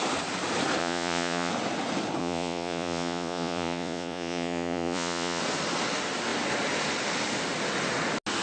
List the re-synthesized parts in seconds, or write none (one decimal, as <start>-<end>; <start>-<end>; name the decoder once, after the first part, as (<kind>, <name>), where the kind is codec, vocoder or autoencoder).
0.8-1.5 (vocoder, Vocos); 2.2-5.4